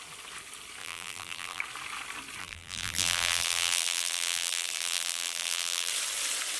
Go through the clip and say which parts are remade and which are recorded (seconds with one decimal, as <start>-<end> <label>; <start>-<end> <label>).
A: 0.0-0.8 recorded; 0.8-1.6 remade; 1.6-2.4 recorded; 2.4-5.9 remade; 5.9-6.6 recorded

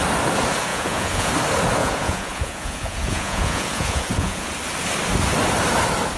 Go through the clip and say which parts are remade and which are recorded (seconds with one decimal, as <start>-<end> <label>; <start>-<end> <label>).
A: 0.0-0.7 recorded; 0.7-1.3 remade; 1.3-1.8 recorded; 1.8-4.5 remade; 4.5-6.2 recorded

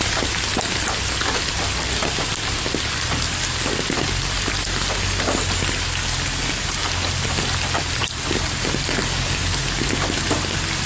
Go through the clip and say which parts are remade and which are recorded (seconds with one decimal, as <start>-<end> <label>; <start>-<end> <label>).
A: 0.0-10.9 recorded

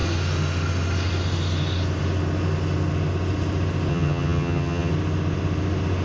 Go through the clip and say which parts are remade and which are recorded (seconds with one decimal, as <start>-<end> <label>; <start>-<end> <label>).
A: 0.0-3.9 recorded; 3.9-4.9 remade; 4.9-6.0 recorded

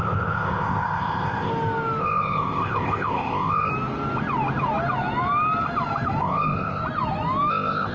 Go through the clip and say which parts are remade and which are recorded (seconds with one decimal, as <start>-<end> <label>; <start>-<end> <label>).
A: 0.0-1.5 remade; 1.5-2.0 recorded; 2.0-3.7 remade; 3.7-6.2 recorded; 6.2-6.8 remade; 6.8-7.5 recorded; 7.5-7.9 remade